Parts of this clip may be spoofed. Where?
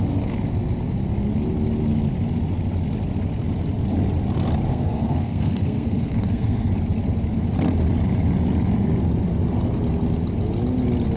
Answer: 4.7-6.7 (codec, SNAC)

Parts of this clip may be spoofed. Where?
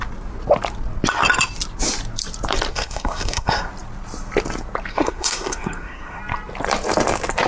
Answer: 2.7-3.7 (codec, SNAC); 4.9-6.2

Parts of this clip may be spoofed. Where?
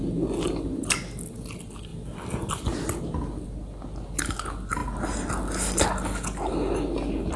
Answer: none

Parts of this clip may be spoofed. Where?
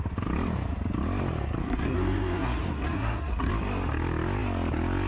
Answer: 1.6-3.5 (codec, SNAC)